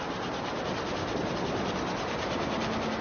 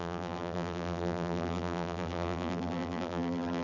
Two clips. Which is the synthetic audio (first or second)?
second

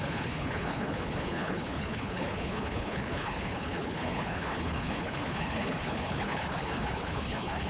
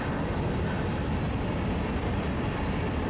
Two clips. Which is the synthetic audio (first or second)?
first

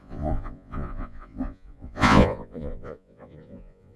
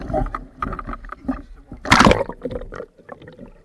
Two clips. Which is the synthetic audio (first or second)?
first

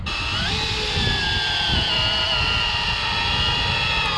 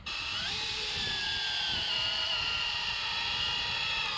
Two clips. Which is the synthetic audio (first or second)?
second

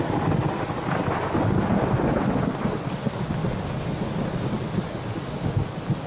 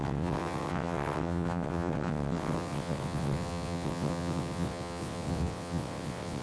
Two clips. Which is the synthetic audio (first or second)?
second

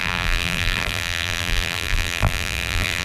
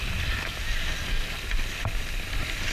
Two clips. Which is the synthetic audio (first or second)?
first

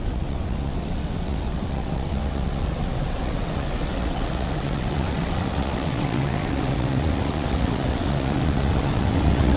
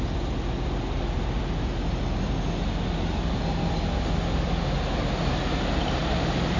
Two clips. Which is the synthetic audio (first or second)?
first